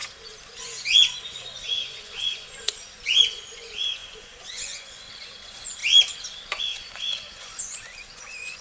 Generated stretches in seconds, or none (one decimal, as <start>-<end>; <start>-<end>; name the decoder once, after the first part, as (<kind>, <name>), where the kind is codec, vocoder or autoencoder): 0.6-5.8 (vocoder, Vocos); 6.6-8.6